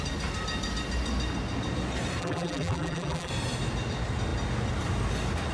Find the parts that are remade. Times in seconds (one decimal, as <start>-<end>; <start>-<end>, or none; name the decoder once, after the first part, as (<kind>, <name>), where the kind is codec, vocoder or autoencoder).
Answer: 2.2-3.3 (vocoder, BigVGAN v2)